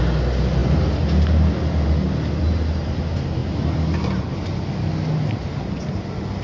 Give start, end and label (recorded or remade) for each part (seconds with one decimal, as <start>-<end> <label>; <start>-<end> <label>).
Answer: 0.0-6.4 recorded